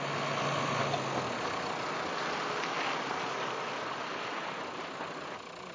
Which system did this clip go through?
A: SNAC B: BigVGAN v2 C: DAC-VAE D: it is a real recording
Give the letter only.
D